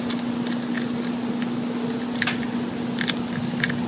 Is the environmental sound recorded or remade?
recorded